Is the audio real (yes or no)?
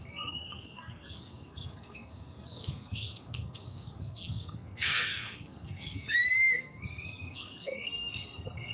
no